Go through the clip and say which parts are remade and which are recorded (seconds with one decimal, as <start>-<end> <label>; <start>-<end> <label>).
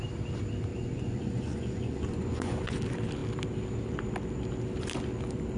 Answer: 0.0-0.7 recorded; 0.7-2.8 remade; 2.8-5.6 recorded